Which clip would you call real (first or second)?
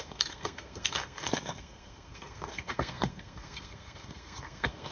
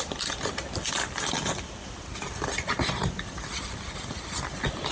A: second